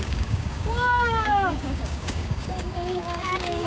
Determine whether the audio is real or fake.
fake